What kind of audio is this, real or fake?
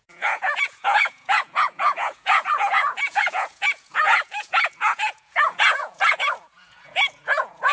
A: fake